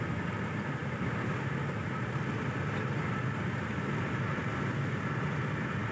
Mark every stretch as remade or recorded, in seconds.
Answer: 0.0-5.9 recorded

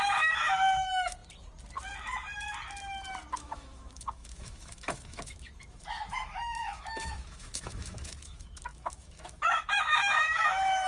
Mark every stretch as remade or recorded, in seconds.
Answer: 0.0-1.2 remade; 1.2-3.3 recorded; 3.3-10.9 remade

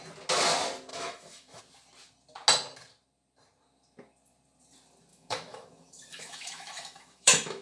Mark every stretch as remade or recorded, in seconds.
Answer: 0.0-0.9 recorded; 0.9-1.6 remade; 1.6-5.1 recorded; 5.1-7.6 remade

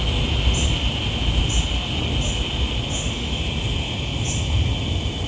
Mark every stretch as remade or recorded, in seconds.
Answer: 0.0-2.9 recorded; 2.9-3.4 remade; 3.4-5.3 recorded

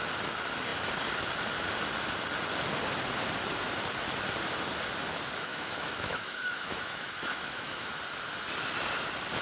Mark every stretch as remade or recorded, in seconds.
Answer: 0.0-5.5 recorded; 5.5-8.0 remade; 8.0-9.4 recorded

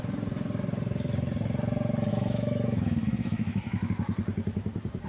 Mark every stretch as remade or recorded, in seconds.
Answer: 0.0-2.1 recorded; 2.1-3.9 remade; 3.9-5.1 recorded

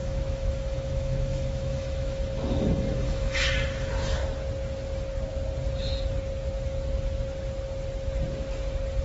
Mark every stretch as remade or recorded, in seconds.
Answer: 0.0-3.5 remade; 3.5-9.0 recorded